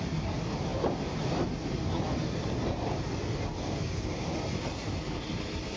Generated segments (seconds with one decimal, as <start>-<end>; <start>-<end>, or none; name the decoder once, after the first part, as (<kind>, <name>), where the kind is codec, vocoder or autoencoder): none